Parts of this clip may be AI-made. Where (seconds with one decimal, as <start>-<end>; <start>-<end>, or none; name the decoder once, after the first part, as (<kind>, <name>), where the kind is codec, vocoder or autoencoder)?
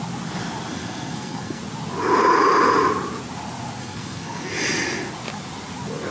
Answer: 0.7-1.6 (codec, SNAC); 3.8-4.5